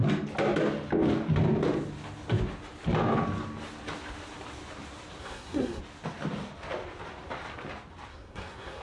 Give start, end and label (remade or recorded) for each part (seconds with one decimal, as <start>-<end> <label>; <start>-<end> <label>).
0.0-5.2 recorded; 5.2-5.8 remade; 5.8-8.1 recorded; 8.1-8.8 remade